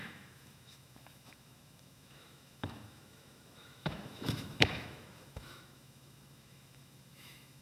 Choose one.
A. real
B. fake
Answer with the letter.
B